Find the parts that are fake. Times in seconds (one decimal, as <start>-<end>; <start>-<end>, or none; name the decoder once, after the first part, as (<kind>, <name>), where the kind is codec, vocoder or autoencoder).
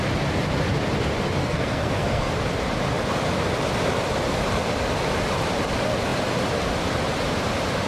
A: 1.4-2.3 (codec, SNAC)